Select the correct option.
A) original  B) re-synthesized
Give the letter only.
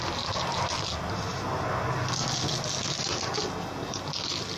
A